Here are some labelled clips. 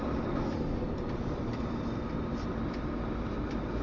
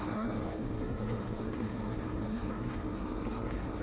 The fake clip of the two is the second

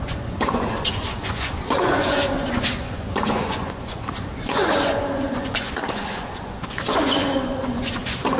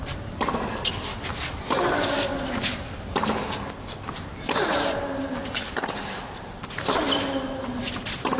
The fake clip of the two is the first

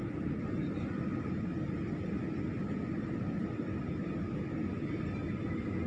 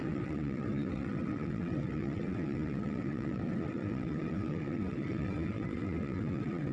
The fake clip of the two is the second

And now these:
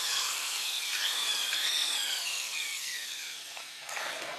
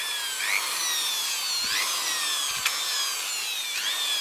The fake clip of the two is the first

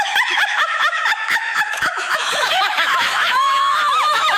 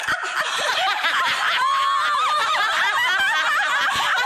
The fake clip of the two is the first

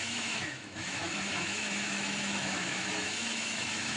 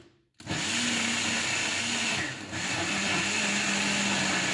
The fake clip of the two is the first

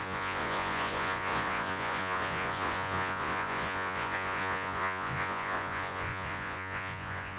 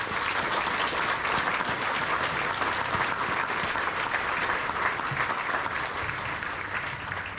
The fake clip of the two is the first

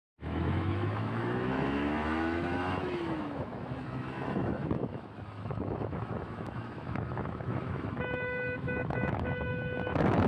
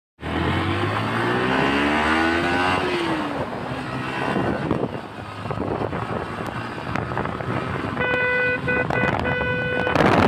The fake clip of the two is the first